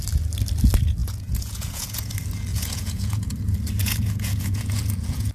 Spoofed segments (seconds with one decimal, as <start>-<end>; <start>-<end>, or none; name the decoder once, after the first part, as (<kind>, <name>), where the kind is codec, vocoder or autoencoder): 1.0-2.1 (vocoder, Vocos); 2.5-3.3; 3.8-5.3